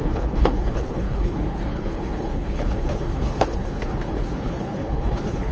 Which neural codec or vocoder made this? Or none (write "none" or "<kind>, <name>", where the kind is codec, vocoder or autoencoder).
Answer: codec, HILCodec